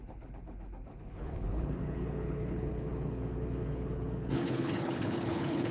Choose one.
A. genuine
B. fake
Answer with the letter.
B